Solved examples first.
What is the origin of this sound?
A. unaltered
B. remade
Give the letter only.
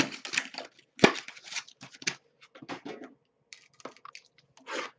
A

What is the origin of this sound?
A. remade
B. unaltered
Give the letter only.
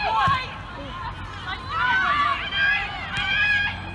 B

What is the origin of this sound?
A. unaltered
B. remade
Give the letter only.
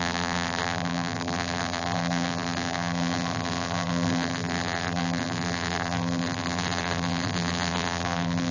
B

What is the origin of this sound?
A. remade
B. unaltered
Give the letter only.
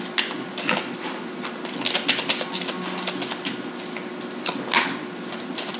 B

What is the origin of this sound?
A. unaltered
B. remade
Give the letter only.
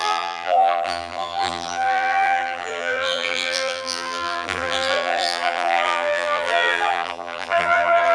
B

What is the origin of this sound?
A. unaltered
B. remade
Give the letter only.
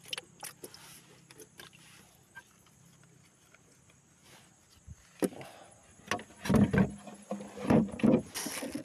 A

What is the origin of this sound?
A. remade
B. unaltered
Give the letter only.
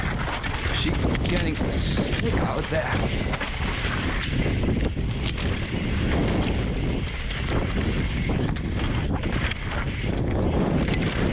B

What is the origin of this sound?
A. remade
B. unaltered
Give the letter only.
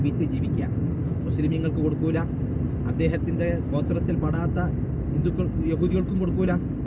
B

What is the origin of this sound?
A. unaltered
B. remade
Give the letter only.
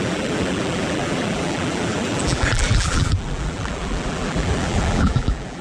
B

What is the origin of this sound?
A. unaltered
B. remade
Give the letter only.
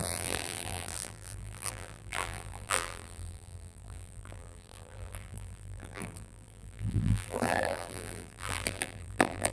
B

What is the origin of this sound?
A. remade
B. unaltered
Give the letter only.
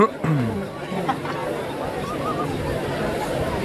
A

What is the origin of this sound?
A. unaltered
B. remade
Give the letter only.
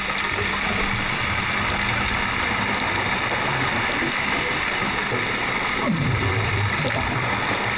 B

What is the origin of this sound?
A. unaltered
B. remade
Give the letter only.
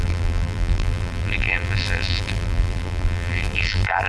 B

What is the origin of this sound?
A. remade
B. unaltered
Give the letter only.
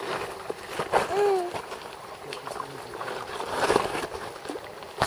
B